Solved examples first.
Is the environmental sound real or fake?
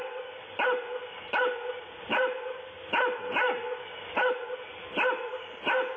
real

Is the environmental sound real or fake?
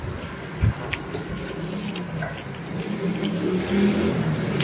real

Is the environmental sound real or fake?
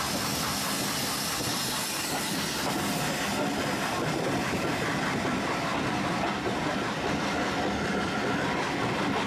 real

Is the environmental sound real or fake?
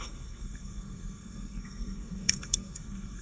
fake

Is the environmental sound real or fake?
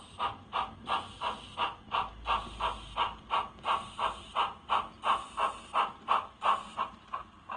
real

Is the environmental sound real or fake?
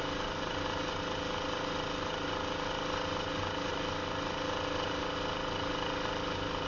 real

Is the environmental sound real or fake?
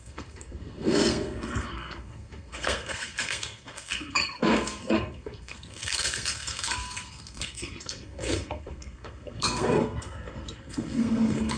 fake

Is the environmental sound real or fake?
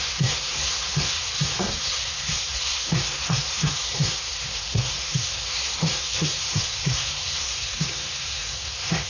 fake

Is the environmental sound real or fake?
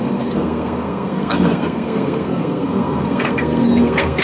fake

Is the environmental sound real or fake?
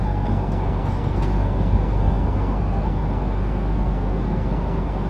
fake